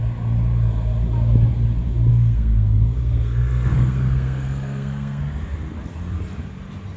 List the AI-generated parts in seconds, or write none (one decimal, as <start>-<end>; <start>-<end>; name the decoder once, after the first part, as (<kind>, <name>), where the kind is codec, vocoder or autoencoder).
2.1-5.2 (codec, SNAC)